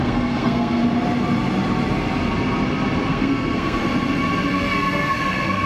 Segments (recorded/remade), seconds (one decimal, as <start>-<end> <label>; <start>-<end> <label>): 0.0-0.8 remade; 0.8-3.1 recorded; 3.1-3.8 remade; 3.8-4.5 recorded; 4.5-5.7 remade